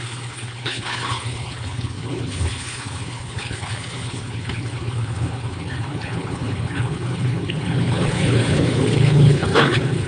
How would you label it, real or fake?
fake